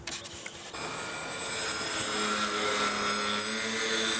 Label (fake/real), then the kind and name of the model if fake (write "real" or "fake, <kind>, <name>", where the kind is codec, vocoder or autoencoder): real